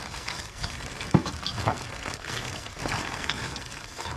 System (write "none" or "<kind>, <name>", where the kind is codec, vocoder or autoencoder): codec, SNAC